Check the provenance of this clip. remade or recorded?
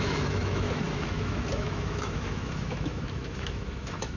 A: remade